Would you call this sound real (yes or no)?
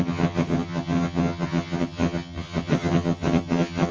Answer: no